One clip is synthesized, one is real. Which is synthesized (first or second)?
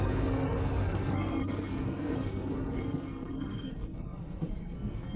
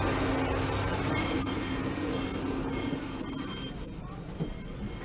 first